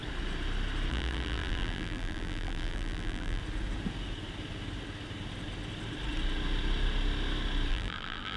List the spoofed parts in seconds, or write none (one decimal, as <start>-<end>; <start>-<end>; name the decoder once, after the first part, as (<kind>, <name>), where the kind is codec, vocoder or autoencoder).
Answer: 0.9-3.4 (vocoder, BigVGAN v2); 7.7-8.4